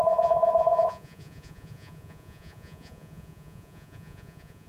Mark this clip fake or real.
fake